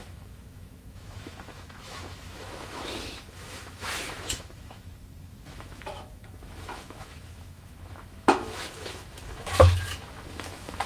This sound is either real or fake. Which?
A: fake